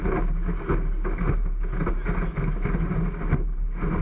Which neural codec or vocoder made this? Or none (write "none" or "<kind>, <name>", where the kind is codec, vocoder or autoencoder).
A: none